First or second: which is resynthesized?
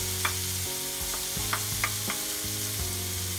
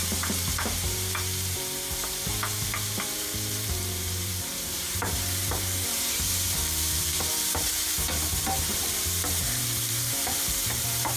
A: second